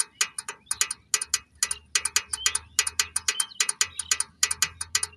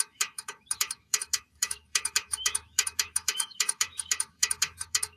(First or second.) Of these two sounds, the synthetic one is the second